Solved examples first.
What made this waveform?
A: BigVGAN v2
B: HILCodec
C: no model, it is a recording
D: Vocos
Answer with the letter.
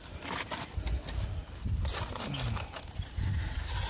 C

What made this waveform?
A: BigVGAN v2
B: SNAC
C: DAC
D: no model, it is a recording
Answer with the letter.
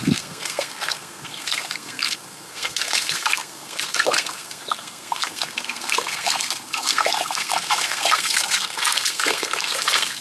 B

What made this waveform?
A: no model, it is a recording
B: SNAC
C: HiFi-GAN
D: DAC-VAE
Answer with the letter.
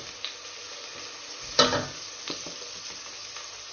A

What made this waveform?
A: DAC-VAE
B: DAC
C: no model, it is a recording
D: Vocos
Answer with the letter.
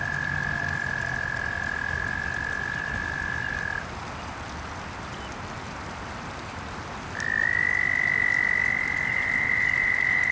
C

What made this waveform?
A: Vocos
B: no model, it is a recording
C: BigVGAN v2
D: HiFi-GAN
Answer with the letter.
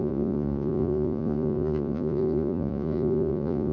A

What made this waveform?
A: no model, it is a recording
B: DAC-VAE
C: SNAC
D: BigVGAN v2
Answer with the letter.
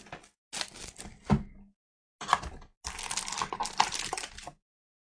A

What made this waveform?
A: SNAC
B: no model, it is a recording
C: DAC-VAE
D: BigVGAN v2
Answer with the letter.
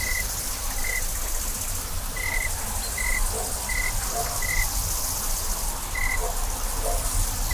B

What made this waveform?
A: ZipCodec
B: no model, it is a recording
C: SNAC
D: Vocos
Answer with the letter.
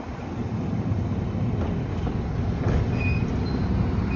B